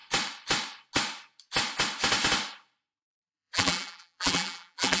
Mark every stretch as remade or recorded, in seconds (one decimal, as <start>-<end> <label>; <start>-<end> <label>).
0.0-3.0 recorded; 3.0-5.0 remade